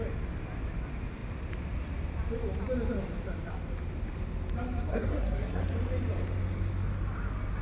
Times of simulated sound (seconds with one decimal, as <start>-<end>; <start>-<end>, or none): 4.9-5.6

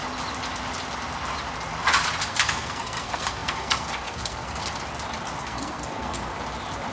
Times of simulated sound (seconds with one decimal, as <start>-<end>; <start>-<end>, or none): 2.2-4.8; 5.4-6.3

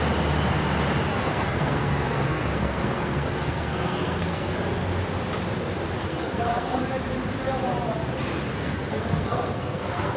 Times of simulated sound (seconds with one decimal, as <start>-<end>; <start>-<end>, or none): 1.1-4.6; 6.0-6.8; 8.5-10.2

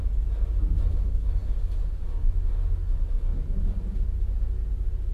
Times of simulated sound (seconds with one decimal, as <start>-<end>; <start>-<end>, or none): none